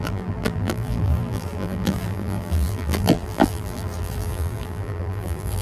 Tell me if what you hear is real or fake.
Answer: fake